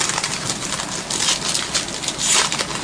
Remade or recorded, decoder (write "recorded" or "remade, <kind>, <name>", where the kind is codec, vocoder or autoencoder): recorded